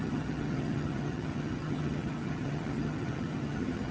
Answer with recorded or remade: remade